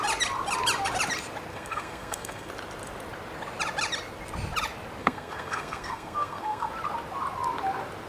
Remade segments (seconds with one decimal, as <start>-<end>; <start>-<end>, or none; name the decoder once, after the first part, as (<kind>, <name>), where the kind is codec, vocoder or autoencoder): 1.5-2.5 (codec, SNAC); 5.0-6.7